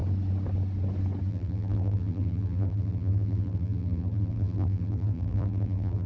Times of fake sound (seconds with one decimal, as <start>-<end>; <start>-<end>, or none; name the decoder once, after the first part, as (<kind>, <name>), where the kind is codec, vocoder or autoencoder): 1.3-6.1 (vocoder, BigVGAN v2)